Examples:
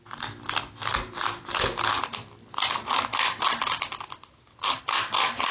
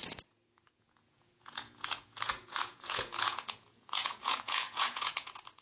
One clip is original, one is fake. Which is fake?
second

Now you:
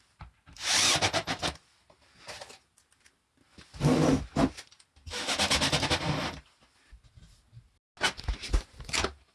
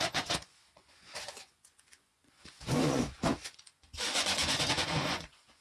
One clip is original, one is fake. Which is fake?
second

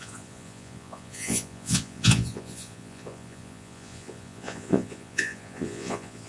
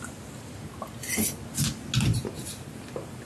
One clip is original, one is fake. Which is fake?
first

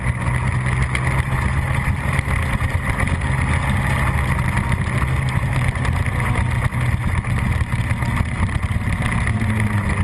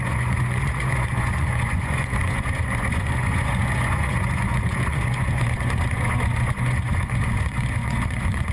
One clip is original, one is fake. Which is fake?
second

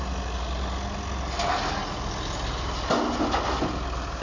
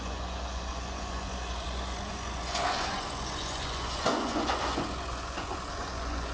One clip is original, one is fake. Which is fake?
second